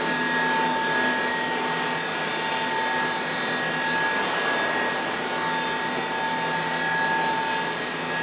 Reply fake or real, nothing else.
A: real